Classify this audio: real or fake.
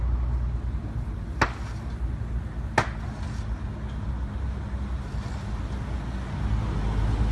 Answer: real